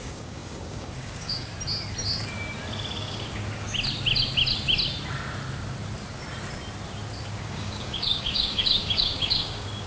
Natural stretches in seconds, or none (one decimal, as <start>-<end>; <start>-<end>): 1.5-3.0; 3.4-7.3